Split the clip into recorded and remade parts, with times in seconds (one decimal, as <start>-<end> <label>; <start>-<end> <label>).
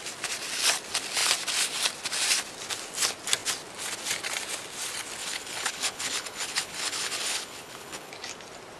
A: 0.0-5.2 recorded; 5.2-8.1 remade; 8.1-8.8 recorded